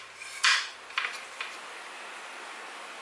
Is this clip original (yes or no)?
yes